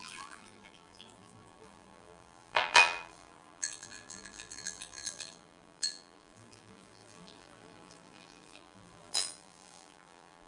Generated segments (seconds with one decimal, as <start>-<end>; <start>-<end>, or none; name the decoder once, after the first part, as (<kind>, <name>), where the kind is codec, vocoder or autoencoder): 0.0-10.5 (vocoder, BigVGAN v2)